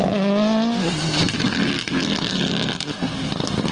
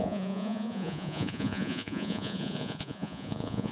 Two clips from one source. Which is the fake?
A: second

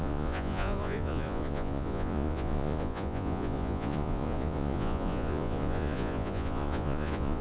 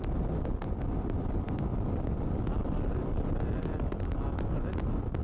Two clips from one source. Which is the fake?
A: first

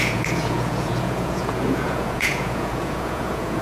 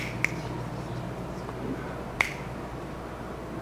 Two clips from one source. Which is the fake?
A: first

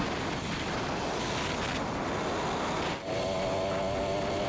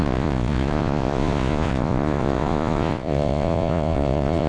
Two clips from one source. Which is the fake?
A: second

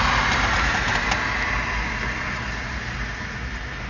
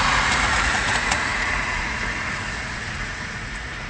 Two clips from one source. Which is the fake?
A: second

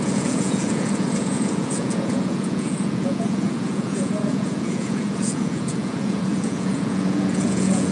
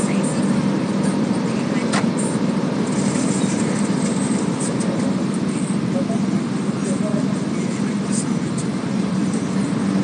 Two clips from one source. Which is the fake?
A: first